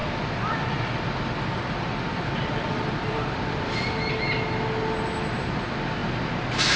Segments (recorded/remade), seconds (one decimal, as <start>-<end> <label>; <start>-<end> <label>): 0.0-4.1 remade; 4.1-6.8 recorded